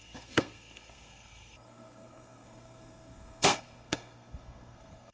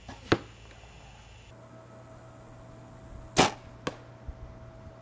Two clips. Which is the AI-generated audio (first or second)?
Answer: first